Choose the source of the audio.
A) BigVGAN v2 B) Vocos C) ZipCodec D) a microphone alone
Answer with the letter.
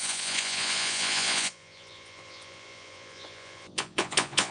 B